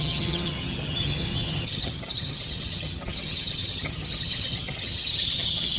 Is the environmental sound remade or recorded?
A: remade